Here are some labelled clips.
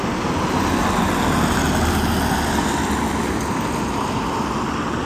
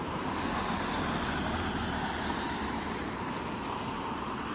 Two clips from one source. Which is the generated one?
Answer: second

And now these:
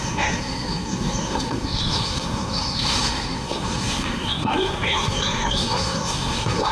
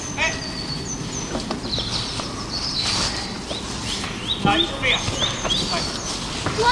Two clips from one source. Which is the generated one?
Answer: first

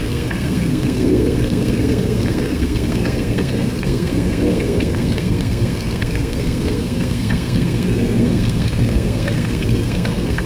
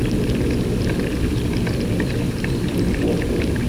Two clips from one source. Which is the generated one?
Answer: first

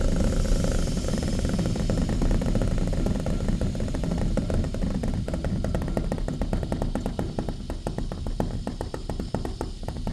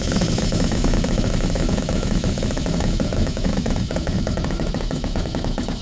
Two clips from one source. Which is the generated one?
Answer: second